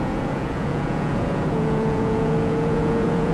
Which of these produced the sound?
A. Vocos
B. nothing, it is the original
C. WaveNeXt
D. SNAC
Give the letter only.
A